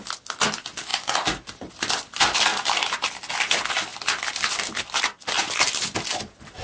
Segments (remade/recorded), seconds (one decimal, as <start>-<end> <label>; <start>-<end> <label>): 0.0-0.9 recorded; 0.9-1.7 remade; 1.7-2.5 recorded; 2.5-3.1 remade; 3.1-6.6 recorded